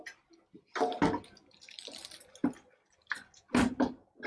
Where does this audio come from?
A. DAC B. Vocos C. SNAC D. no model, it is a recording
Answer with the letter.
D